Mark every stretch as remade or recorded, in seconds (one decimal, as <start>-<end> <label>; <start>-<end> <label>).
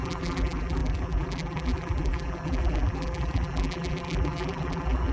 0.0-5.1 remade